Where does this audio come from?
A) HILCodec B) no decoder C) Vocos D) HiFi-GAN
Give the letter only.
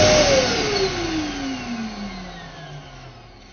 B